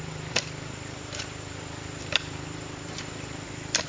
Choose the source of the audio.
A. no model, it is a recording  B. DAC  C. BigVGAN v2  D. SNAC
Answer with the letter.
C